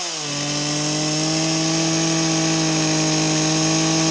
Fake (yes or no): no